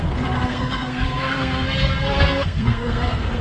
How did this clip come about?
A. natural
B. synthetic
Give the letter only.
B